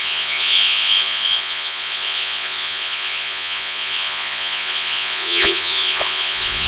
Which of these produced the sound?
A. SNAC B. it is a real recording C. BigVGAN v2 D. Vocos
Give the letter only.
D